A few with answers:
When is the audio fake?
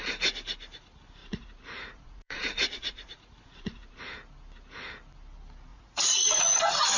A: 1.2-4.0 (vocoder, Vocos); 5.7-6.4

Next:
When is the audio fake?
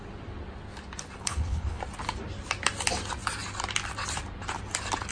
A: 1.2-1.8 (codec, HILCodec)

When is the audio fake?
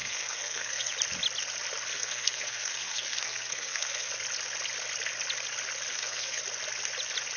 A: 0.0-0.9 (codec, SNAC); 1.9-4.1; 5.9-6.4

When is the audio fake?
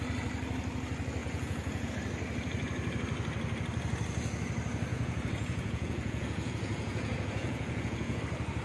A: 1.2-1.9 (vocoder, Vocos); 4.9-8.2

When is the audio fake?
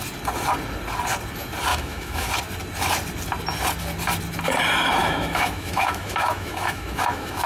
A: 1.7-2.3 (autoencoder, DAC-VAE); 5.0-7.5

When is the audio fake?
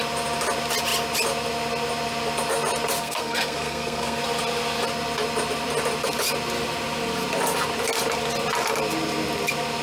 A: 3.0-4.2 (codec, SNAC)